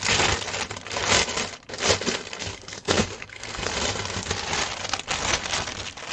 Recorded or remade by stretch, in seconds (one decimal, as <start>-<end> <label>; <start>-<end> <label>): 0.0-2.4 recorded; 2.4-3.7 remade; 3.7-6.1 recorded

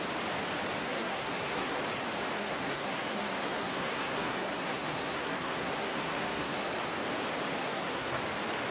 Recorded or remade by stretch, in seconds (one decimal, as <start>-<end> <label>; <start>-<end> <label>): 0.0-0.8 recorded; 0.8-1.8 remade; 1.8-2.4 recorded; 2.4-6.7 remade; 6.7-7.6 recorded; 7.6-8.2 remade; 8.2-8.7 recorded

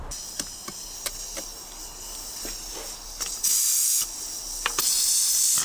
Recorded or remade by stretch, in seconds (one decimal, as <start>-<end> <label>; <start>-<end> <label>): 0.0-5.6 recorded